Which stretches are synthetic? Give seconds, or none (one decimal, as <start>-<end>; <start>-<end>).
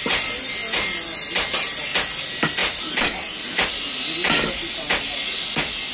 none